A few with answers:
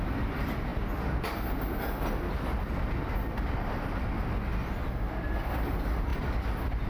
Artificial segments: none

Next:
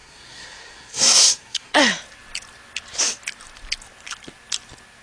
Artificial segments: 0.0-1.8 (codec, SNAC)

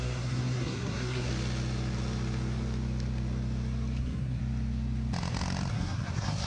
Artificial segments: 0.0-1.3 (codec, SNAC); 4.0-4.4; 5.7-6.5

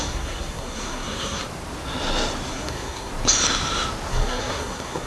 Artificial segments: 0.0-1.4 (codec, SNAC); 2.5-3.1; 4.1-5.1

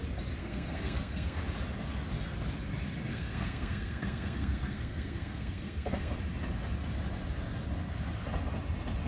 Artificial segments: 0.4-1.4 (codec, SNAC); 3.1-6.1

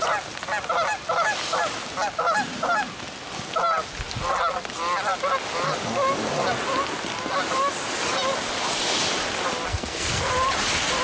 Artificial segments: 9.7-10.3 (codec, SNAC)

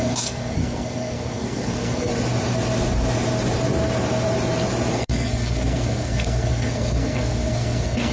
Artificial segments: 0.0-2.1 (codec, SNAC); 4.9-8.1

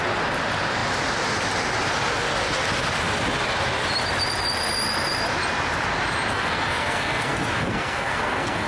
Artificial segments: 6.3-8.7 (codec, SNAC)